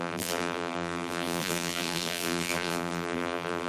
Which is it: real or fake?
fake